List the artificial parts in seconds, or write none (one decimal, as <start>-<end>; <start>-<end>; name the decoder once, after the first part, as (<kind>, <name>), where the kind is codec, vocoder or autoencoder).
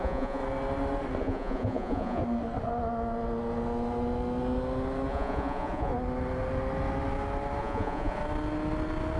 0.0-0.4 (vocoder, Vocos); 1.2-2.2; 5.1-5.9; 7.6-8.2